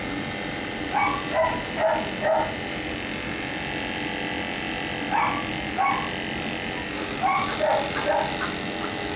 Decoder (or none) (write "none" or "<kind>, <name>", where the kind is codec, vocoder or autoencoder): none